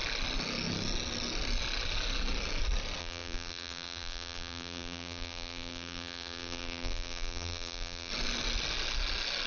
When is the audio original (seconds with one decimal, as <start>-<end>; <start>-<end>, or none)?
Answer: 0.0-3.0; 8.1-9.5